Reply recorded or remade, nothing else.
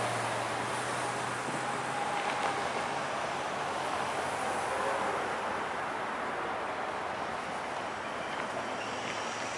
recorded